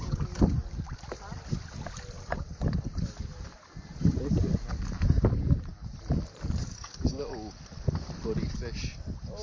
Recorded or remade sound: recorded